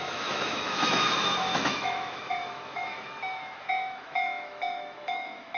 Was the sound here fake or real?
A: fake